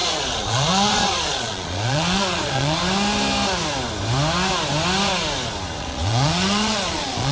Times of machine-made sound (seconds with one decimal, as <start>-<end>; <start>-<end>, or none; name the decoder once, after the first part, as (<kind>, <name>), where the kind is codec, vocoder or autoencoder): 0.0-2.8 (vocoder, Vocos); 5.8-7.3